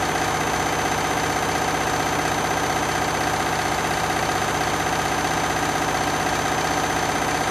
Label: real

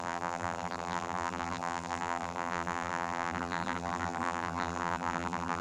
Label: fake